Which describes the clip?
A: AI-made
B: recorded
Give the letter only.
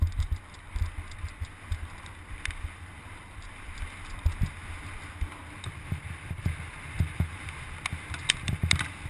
B